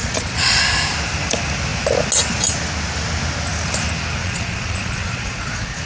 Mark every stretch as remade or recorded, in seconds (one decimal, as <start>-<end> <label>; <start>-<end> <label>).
0.0-0.6 remade; 0.6-4.2 recorded; 4.2-5.8 remade